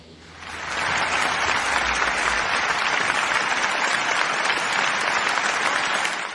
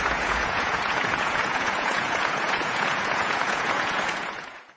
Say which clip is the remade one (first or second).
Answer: second